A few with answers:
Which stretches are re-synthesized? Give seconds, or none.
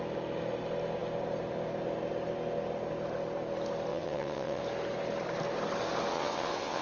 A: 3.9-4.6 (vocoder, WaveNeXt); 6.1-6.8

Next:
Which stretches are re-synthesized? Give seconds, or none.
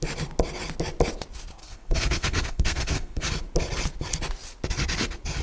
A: 1.6-3.3 (codec, SNAC)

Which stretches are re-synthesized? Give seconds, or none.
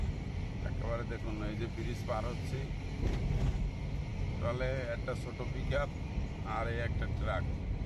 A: none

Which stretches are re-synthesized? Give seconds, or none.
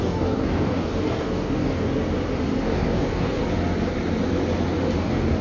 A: 0.0-1.9 (codec, DAC); 2.6-3.4; 5.0-5.4